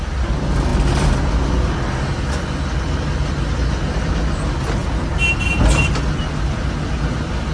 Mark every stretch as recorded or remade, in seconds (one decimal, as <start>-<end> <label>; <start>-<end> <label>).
0.0-7.5 recorded